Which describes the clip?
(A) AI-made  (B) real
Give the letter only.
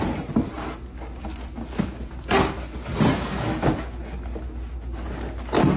B